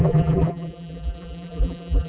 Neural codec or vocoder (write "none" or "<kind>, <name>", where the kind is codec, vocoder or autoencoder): vocoder, BigVGAN v2